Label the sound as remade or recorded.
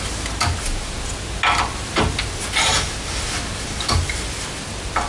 recorded